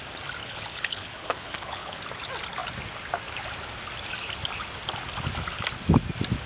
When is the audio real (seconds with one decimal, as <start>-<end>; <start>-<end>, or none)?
0.0-0.4; 2.0-6.5